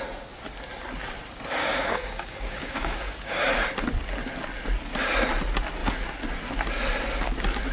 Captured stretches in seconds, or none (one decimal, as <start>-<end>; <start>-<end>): 0.0-1.6; 3.5-7.7